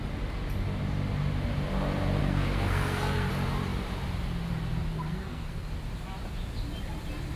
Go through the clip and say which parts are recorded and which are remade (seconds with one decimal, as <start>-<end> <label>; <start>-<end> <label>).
0.0-2.2 recorded; 2.2-3.3 remade; 3.3-4.9 recorded; 4.9-5.7 remade; 5.7-7.4 recorded